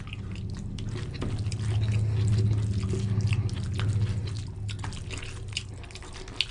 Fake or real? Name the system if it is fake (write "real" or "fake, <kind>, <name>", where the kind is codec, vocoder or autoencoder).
real